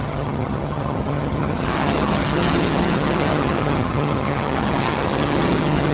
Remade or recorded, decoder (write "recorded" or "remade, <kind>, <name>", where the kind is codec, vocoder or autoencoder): remade, vocoder, HiFi-GAN